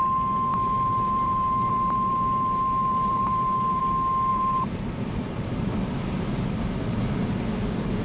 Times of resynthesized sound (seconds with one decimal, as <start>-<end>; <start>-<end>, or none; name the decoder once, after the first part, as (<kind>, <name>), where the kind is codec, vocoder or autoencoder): 0.5-3.8 (vocoder, BigVGAN v2); 4.3-5.5